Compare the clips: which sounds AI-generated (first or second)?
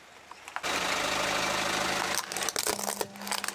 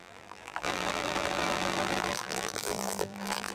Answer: second